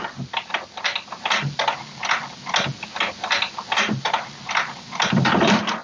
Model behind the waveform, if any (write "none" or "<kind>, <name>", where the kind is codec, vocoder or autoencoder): none